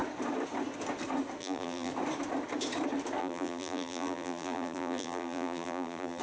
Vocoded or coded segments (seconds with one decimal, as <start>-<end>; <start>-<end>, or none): 1.4-1.9; 3.2-6.2

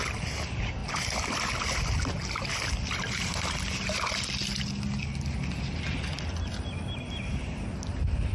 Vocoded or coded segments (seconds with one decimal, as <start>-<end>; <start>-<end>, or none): 0.8-2.1

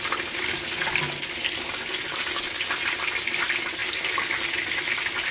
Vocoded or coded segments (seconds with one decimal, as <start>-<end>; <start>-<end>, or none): none

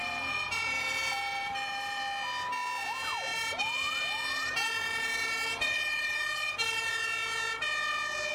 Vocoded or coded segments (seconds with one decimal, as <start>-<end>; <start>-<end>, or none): 0.0-2.0; 3.3-6.9

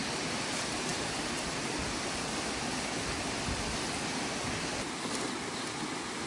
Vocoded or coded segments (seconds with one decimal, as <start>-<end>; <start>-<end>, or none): none